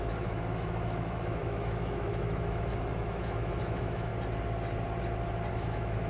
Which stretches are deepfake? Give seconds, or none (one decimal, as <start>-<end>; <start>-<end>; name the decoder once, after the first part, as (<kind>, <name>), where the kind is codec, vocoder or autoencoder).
0.0-4.1 (autoencoder, DAC-VAE); 5.5-6.1